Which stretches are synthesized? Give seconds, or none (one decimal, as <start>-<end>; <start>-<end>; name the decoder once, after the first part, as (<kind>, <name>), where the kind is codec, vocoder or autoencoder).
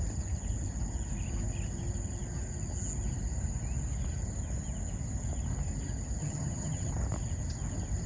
6.2-6.9 (vocoder, HiFi-GAN)